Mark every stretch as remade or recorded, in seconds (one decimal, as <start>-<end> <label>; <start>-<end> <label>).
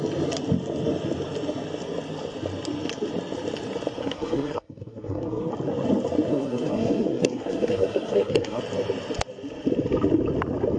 0.0-4.0 recorded; 4.0-5.5 remade; 5.5-6.3 recorded; 6.3-8.6 remade; 8.6-10.8 recorded